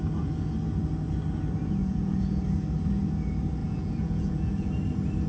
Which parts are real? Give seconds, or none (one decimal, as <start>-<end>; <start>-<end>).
0.0-1.8; 2.5-3.6; 4.7-5.3